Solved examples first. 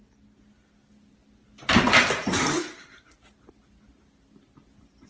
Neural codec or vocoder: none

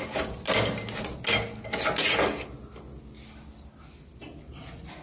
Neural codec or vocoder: none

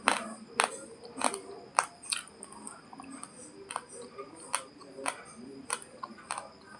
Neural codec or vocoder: none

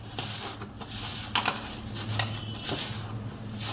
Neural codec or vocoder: none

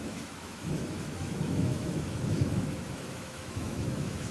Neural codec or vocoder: autoencoder, DAC-VAE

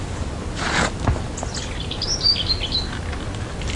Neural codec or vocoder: none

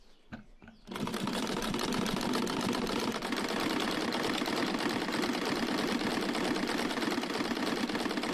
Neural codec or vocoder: none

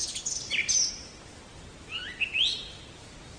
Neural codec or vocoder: none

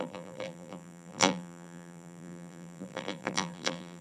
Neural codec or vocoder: vocoder, BigVGAN v2